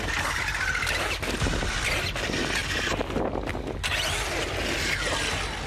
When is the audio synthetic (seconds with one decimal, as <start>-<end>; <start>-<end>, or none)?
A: none